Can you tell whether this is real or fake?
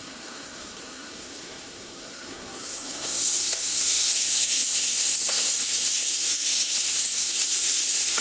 fake